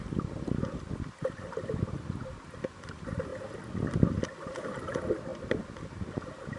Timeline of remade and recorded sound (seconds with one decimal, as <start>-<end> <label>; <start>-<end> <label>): 0.0-6.6 recorded